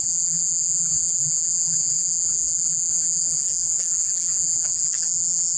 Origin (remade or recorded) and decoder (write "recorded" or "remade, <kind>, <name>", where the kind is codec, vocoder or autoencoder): remade, vocoder, BigVGAN v2